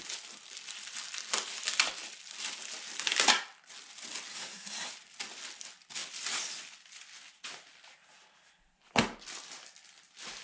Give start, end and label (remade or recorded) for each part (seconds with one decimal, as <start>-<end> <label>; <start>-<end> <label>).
0.0-4.3 recorded; 4.3-4.9 remade; 4.9-10.4 recorded